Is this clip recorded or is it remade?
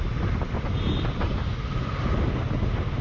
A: recorded